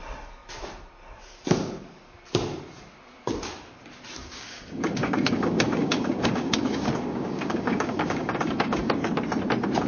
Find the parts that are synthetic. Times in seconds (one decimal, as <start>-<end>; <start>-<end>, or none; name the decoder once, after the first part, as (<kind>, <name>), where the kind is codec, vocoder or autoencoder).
4.2-9.1 (codec, DAC)